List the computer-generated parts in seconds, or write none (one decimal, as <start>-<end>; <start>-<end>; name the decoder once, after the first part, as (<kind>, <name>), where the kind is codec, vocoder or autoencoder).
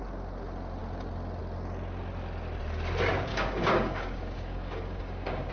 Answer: 3.3-5.5 (codec, DAC)